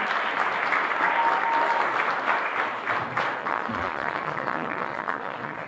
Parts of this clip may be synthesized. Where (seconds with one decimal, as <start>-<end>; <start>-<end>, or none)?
3.4-5.7